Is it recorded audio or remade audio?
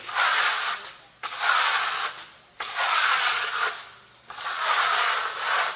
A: recorded